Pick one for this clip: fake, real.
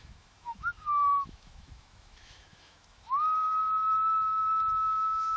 fake